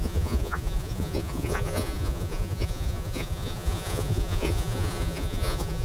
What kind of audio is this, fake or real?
fake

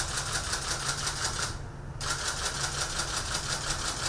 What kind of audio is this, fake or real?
real